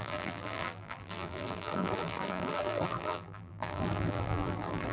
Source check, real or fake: fake